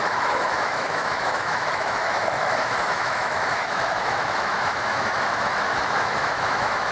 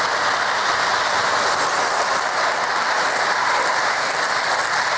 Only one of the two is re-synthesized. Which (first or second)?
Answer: first